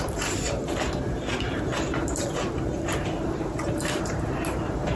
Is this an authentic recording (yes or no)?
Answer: no